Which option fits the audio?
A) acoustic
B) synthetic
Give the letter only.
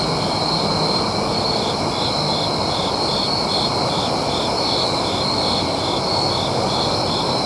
A